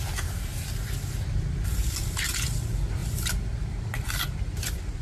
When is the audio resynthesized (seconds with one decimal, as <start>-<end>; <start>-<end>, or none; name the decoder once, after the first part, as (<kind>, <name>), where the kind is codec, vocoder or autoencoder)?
0.5-2.1 (vocoder, BigVGAN v2)